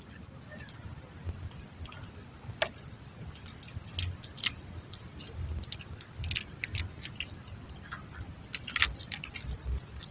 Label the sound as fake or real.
real